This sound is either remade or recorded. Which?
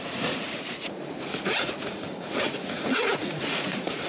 remade